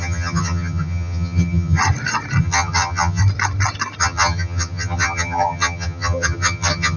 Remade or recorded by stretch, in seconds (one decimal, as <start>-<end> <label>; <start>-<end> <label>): 0.0-1.8 remade; 1.8-2.4 recorded; 2.4-3.2 remade; 3.2-4.0 recorded; 4.0-7.0 remade